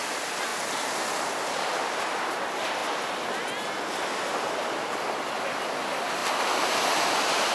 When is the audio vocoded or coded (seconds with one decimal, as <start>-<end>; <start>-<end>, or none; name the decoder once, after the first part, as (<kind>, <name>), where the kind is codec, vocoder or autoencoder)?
none